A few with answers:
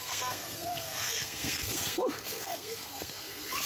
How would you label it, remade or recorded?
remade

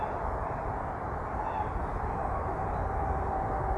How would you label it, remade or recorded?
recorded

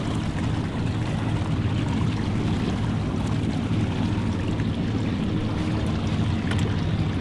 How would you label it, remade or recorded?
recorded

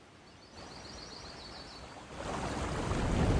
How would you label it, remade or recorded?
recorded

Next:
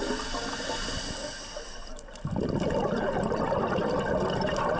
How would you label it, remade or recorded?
recorded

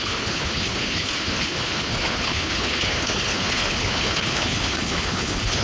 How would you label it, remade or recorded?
remade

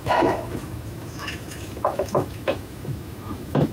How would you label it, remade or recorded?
remade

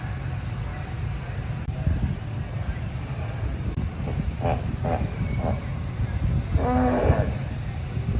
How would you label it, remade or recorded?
recorded